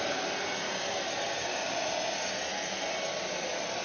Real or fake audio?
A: real